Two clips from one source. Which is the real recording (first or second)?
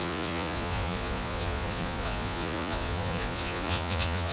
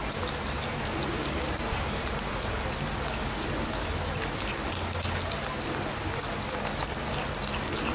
second